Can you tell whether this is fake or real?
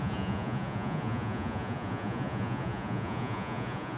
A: fake